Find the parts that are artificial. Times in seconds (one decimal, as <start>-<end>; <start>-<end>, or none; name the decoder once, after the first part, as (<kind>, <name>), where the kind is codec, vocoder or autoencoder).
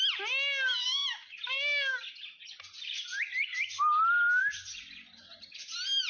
none